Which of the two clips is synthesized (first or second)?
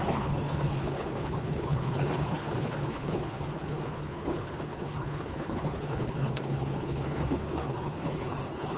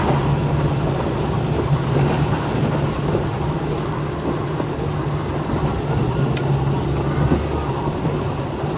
first